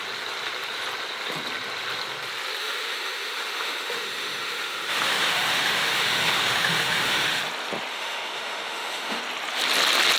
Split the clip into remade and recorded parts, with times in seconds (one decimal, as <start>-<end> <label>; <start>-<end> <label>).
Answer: 0.0-2.6 recorded; 2.6-7.4 remade; 7.4-7.9 recorded; 7.9-9.2 remade; 9.2-10.2 recorded

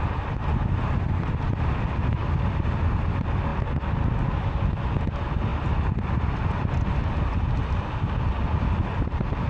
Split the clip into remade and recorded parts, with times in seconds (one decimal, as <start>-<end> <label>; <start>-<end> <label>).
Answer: 0.0-9.5 recorded

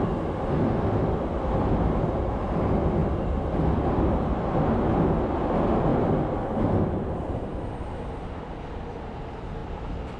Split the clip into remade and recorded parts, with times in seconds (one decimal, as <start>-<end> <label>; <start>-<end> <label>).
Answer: 0.0-10.2 recorded

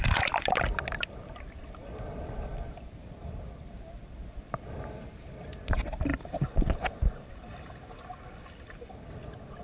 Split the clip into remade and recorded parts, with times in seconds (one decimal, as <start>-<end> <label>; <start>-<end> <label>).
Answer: 0.0-9.6 recorded